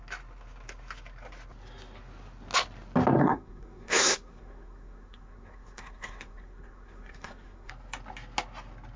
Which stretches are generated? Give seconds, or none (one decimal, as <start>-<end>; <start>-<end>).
3.2-7.7